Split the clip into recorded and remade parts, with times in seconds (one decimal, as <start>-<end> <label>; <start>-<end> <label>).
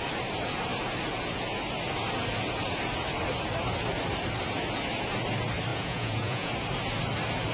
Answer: 0.0-5.7 recorded; 5.7-6.5 remade; 6.5-7.5 recorded